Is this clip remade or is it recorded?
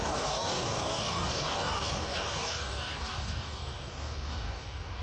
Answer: remade